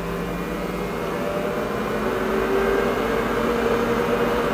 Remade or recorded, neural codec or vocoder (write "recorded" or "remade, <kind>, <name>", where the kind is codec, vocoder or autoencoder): recorded